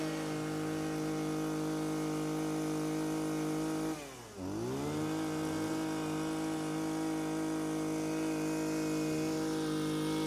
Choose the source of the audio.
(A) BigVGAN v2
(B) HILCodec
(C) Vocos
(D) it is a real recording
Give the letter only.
D